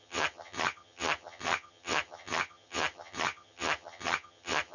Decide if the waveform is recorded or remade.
remade